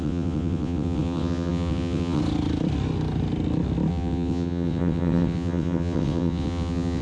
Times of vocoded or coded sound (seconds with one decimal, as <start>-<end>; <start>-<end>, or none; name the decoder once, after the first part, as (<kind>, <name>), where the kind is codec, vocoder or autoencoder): 0.0-2.2 (vocoder, WaveNeXt); 3.9-7.0